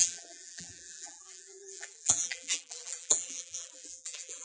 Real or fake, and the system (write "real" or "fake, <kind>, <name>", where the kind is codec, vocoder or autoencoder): fake, vocoder, BigVGAN v2